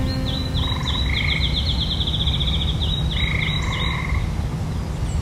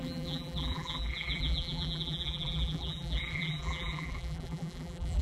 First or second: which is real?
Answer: first